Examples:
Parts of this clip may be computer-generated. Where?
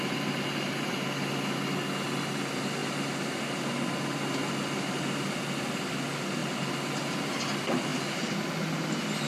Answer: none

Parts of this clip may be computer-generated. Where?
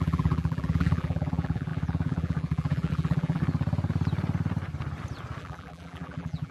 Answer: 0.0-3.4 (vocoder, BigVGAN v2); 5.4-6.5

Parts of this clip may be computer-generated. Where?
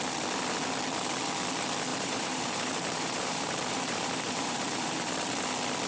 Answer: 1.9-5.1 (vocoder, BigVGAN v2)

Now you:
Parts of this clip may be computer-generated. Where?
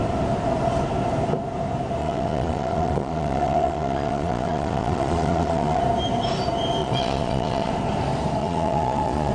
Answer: 2.0-5.8 (vocoder, Vocos); 6.8-7.7; 8.4-9.3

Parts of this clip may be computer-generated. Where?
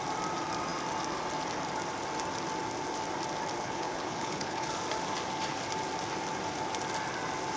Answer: 3.6-4.7 (codec, HILCodec)